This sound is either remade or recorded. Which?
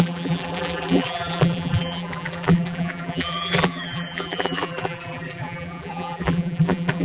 remade